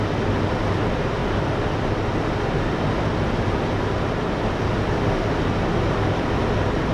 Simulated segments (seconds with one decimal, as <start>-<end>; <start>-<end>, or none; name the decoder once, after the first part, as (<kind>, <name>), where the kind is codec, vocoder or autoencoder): none